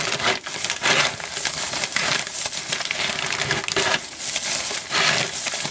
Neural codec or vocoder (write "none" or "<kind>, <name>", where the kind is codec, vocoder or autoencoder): none